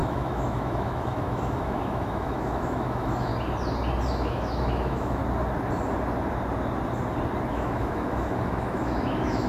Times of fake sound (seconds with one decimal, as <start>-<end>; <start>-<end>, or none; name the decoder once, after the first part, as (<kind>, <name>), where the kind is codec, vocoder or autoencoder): 0.0-3.3 (autoencoder, DAC-VAE); 4.1-5.2; 7.5-9.5